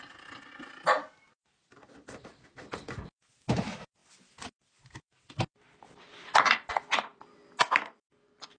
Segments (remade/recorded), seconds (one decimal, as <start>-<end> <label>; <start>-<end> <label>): 0.0-7.1 recorded; 7.1-8.0 remade; 8.0-8.6 recorded